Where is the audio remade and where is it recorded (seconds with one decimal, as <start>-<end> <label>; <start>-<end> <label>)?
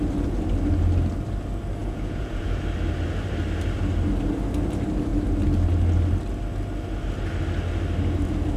0.0-1.8 recorded; 1.8-2.4 remade; 2.4-8.6 recorded